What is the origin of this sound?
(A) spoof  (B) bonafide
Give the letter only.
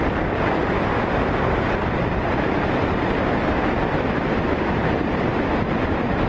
A